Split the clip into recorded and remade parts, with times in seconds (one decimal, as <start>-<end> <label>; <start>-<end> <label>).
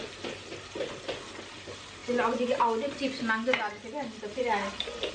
0.0-5.1 recorded